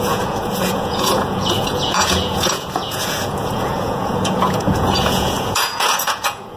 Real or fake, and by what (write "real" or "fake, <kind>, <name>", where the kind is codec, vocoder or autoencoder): fake, vocoder, Vocos